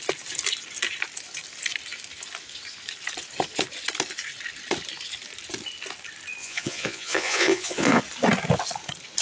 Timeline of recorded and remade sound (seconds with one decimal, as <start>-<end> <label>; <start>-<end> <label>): 0.0-6.4 recorded; 6.4-8.0 remade; 8.0-9.2 recorded